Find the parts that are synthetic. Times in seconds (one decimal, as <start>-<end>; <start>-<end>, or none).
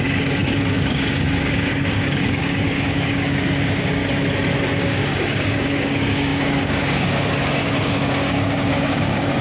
0.0-4.0; 4.8-9.4